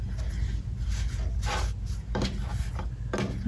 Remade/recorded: recorded